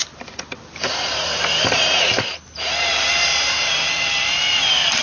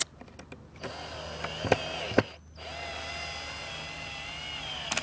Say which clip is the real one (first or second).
second